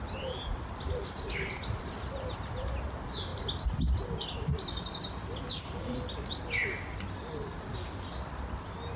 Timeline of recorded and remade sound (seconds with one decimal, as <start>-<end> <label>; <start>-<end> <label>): 0.0-3.3 remade; 3.3-5.5 recorded; 5.5-6.6 remade; 6.6-9.0 recorded